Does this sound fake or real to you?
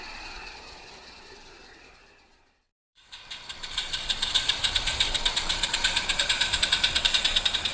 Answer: fake